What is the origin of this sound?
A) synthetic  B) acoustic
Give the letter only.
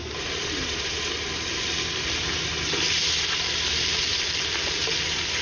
B